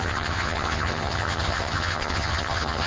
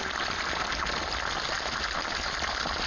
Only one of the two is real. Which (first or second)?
second